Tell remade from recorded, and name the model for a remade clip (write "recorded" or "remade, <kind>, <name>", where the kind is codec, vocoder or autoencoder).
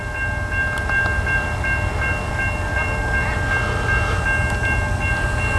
recorded